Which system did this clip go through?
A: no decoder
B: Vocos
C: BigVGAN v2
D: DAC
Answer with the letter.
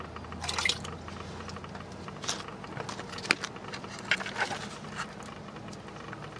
A